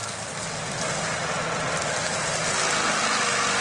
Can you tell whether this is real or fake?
real